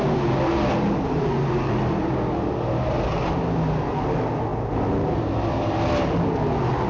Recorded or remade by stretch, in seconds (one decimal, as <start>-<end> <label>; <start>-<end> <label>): 0.0-6.9 recorded